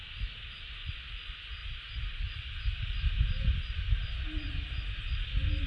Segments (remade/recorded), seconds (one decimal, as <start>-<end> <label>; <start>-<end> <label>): 0.0-1.6 recorded; 1.6-5.0 remade; 5.0-5.7 recorded